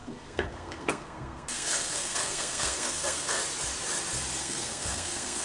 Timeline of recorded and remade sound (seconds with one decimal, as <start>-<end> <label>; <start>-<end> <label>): 0.0-3.4 remade; 3.4-4.4 recorded; 4.4-5.4 remade